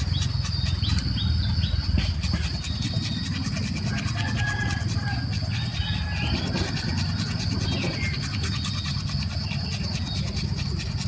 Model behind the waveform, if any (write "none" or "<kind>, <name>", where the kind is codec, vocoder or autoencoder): none